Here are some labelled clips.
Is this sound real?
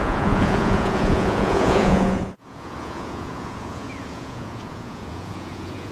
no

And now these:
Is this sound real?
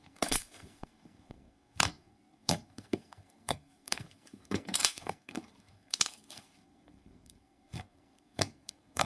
no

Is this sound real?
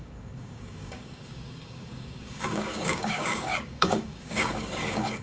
no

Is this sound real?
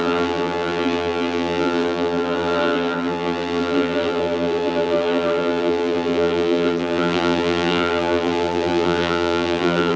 no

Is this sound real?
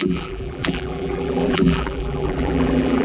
no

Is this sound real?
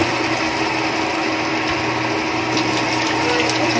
yes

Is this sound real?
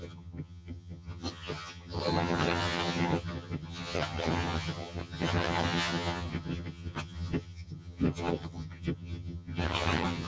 no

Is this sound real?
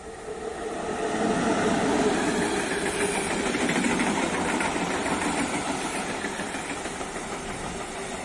no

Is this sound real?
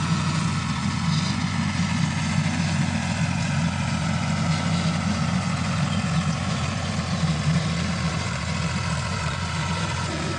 no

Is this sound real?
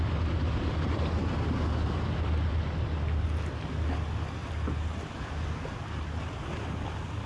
yes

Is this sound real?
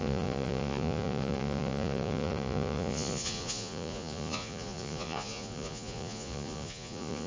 no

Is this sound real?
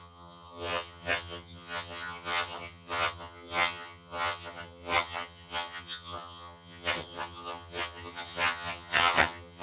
no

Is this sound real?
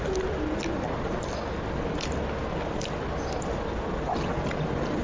yes